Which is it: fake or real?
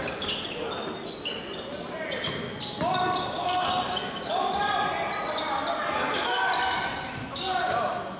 real